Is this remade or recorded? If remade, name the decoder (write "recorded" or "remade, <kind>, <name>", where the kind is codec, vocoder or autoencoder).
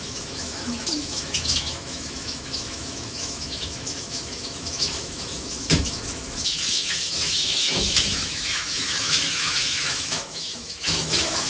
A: remade, autoencoder, DAC-VAE